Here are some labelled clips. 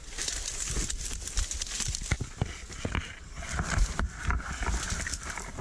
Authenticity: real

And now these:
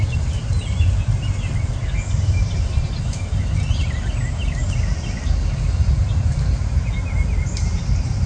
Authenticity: real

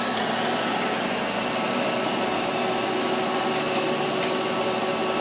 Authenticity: real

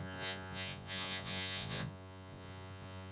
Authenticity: fake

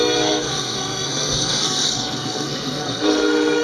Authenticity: fake